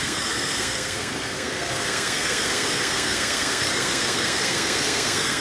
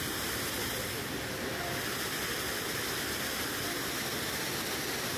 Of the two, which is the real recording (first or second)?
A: second